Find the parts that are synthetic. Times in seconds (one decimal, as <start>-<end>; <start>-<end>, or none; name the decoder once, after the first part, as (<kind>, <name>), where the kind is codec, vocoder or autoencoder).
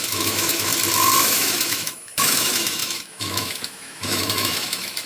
0.0-0.7 (autoencoder, DAC-VAE); 1.2-5.1